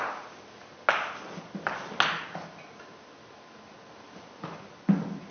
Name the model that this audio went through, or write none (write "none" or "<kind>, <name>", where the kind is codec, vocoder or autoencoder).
none